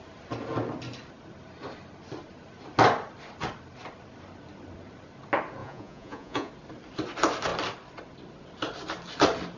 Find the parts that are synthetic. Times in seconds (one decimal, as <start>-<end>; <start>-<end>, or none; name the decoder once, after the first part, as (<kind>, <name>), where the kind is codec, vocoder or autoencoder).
5.6-6.5 (vocoder, Vocos)